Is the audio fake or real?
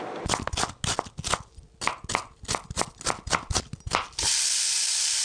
real